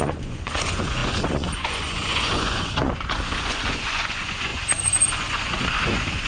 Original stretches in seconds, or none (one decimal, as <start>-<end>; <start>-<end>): none